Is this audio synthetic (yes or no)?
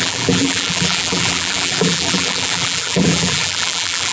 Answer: yes